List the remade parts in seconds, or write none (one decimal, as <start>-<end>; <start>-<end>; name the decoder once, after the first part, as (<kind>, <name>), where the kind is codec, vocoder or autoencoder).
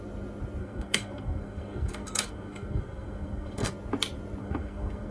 0.6-3.7 (codec, SNAC); 4.4-5.1